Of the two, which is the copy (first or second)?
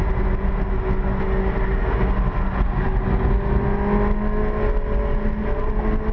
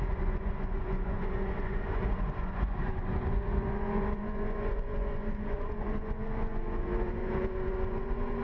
second